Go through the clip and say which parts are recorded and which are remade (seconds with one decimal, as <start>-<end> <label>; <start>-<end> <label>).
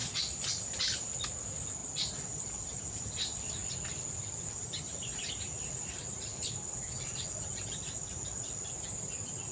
0.0-6.3 recorded; 6.3-7.0 remade; 7.0-9.5 recorded